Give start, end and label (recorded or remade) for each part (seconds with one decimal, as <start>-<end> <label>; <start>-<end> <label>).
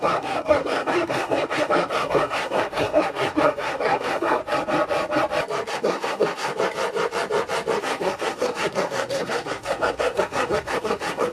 0.0-4.4 remade; 4.4-5.7 recorded; 5.7-6.5 remade; 6.5-7.8 recorded; 7.8-11.3 remade